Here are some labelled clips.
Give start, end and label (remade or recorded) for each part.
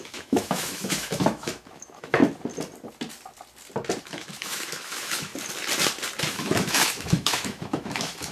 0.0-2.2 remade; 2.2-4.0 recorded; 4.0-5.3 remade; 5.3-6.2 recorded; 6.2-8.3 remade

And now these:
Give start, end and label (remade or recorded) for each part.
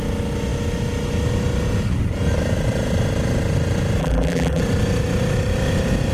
0.0-4.0 recorded; 4.0-4.6 remade; 4.6-6.1 recorded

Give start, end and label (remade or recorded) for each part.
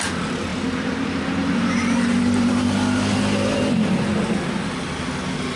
0.0-5.6 recorded